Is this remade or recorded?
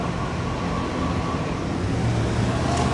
recorded